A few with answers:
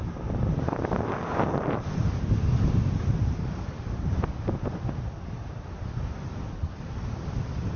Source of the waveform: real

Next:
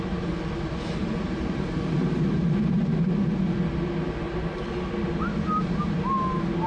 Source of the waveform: real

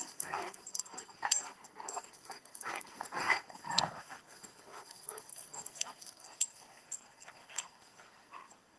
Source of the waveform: fake